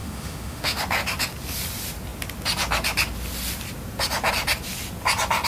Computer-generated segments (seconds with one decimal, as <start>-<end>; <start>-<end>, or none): 0.0-0.8